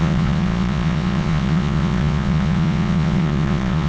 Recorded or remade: remade